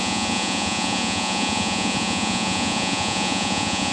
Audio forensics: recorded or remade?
remade